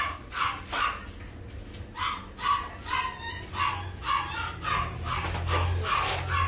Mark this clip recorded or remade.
recorded